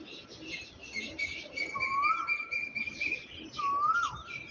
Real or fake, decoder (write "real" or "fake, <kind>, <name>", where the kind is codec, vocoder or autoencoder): real